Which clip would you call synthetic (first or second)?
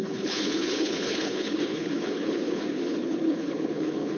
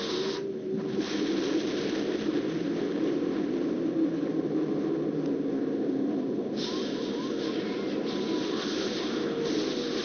first